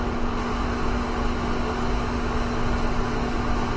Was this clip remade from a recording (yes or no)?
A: no